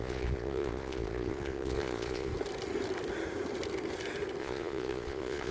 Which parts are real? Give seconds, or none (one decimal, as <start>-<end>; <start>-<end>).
2.3-4.4